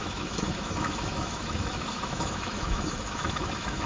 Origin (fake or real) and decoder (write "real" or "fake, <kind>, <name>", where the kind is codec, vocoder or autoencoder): fake, autoencoder, DAC-VAE